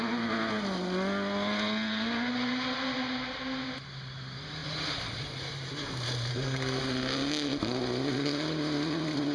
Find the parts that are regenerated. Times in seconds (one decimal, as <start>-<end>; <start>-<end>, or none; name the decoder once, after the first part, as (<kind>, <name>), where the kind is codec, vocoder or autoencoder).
6.3-6.8 (codec, SNAC)